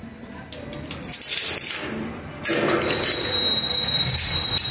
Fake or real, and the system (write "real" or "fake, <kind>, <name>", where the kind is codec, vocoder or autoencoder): real